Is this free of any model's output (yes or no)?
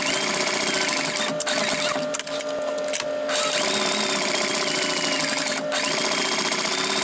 yes